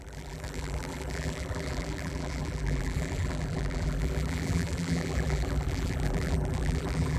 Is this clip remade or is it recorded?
remade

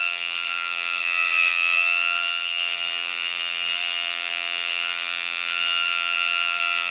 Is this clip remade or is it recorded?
remade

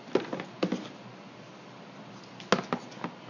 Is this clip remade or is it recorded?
recorded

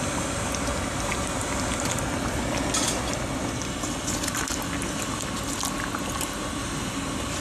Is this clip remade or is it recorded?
recorded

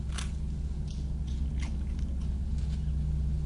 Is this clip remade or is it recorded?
recorded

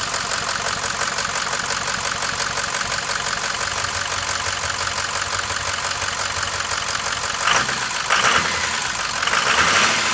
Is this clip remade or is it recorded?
recorded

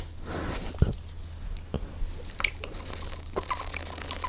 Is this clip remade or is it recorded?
recorded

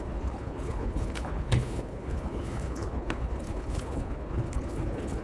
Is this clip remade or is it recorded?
remade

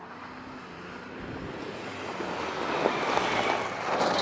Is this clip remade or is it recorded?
recorded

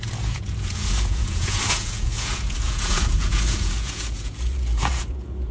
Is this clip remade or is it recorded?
remade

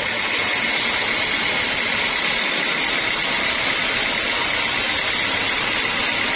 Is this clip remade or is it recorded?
recorded